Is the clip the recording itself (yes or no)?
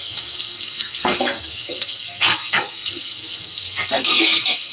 no